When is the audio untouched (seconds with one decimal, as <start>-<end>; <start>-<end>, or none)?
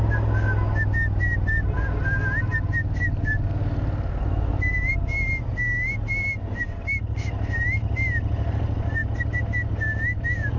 0.0-10.6